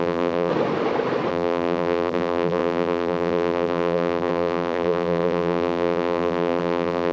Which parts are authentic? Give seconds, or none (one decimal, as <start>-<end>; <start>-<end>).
0.5-1.3